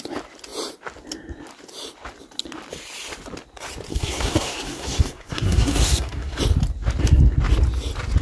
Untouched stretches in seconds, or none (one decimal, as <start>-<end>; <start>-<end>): 0.0-3.9; 6.4-8.2